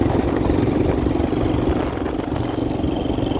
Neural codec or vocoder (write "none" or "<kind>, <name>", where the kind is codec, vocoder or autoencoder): none